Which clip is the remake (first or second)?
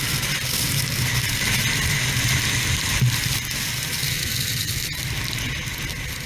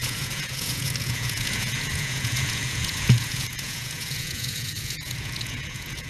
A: second